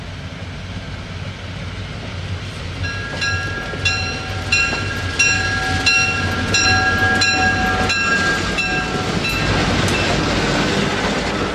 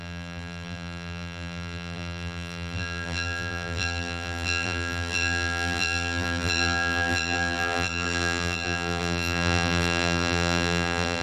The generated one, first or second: second